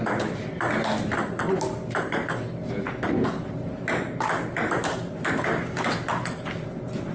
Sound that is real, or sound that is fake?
real